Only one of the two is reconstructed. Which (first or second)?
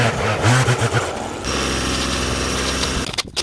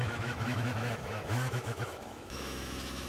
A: second